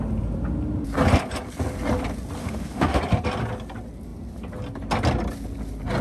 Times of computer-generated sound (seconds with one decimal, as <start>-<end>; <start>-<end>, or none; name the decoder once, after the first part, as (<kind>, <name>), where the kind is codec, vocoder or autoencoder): 2.4-3.0 (autoencoder, DAC-VAE)